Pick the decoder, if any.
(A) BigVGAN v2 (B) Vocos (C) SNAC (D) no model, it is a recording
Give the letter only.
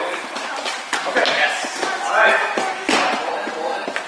D